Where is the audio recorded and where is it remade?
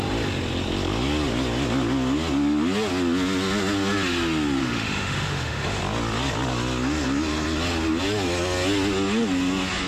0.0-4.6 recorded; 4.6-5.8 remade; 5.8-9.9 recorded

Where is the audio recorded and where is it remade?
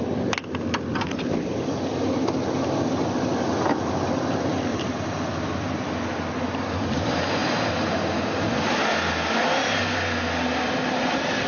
0.0-4.7 recorded; 4.7-6.0 remade; 6.0-7.4 recorded; 7.4-7.9 remade; 7.9-11.5 recorded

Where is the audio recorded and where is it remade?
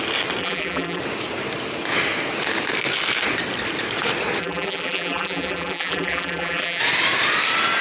0.0-0.4 recorded; 0.4-1.0 remade; 1.0-4.4 recorded; 4.4-6.8 remade; 6.8-7.8 recorded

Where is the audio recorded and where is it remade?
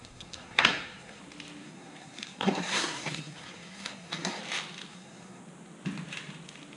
0.0-1.2 remade; 1.2-1.6 recorded; 1.6-4.4 remade; 4.4-4.9 recorded; 4.9-5.4 remade; 5.4-6.8 recorded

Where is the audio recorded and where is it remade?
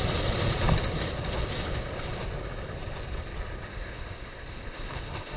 0.0-3.7 recorded; 3.7-5.4 remade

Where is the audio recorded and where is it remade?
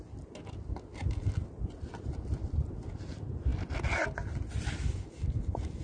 0.0-5.8 recorded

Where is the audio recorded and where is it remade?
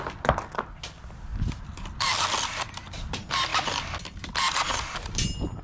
0.0-1.3 recorded; 1.3-2.7 remade; 2.7-5.6 recorded